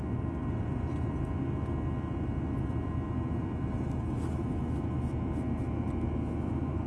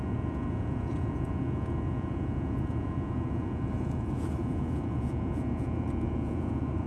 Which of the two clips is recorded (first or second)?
first